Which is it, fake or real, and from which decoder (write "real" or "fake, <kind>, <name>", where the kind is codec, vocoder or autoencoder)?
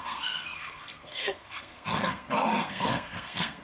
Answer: fake, codec, SNAC